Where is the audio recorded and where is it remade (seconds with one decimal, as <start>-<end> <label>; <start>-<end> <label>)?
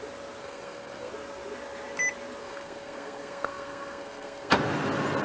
0.0-0.4 recorded; 0.4-1.1 remade; 1.1-2.4 recorded; 2.4-4.5 remade; 4.5-5.2 recorded